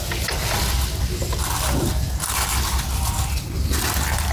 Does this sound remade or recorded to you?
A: recorded